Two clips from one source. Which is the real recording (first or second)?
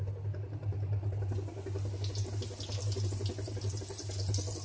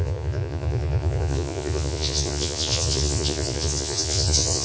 first